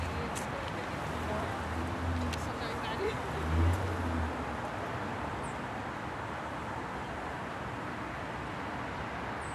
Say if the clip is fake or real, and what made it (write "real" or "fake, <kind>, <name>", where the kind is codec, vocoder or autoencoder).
real